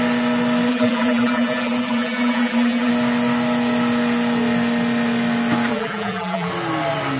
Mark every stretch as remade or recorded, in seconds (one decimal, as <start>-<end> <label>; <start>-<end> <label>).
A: 0.0-0.7 recorded; 0.7-2.9 remade; 2.9-5.7 recorded; 5.7-6.5 remade; 6.5-7.2 recorded